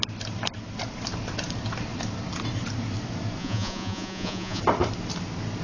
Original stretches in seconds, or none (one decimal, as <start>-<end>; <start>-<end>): 0.0-3.4; 4.6-5.6